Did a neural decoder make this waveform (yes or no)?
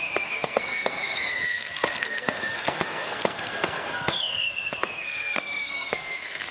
yes